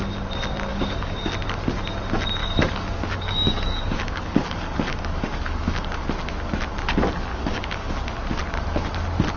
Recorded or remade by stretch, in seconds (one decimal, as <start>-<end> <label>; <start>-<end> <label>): 0.0-0.7 recorded; 0.7-1.3 remade; 1.3-2.4 recorded; 2.4-6.0 remade; 6.0-7.3 recorded; 7.3-7.9 remade; 7.9-9.4 recorded